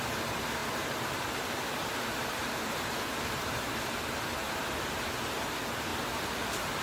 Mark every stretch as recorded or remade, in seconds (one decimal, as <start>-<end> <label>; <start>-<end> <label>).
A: 0.0-0.6 recorded; 0.6-4.2 remade; 4.2-5.9 recorded; 5.9-6.8 remade